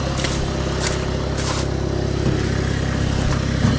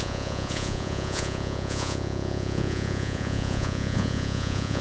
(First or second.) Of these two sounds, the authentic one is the first